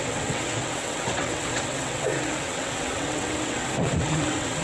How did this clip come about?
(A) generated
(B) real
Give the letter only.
A